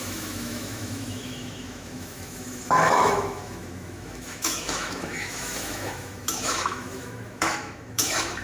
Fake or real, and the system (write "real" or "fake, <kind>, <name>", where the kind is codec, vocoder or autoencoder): fake, autoencoder, DAC-VAE